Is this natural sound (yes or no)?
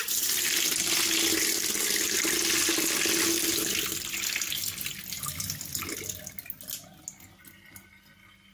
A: yes